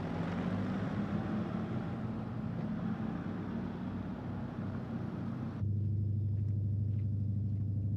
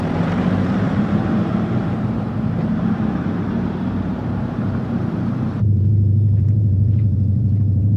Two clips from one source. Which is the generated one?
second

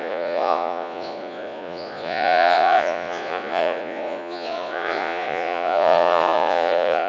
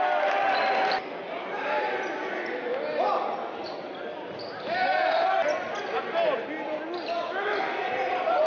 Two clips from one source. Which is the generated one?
first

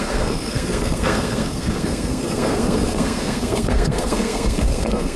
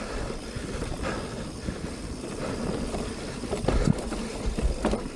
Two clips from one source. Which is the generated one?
first